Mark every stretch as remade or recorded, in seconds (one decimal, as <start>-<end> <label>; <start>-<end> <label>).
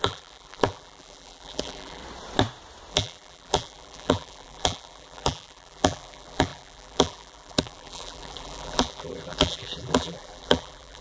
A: 0.0-2.0 remade; 2.0-2.9 recorded; 2.9-11.0 remade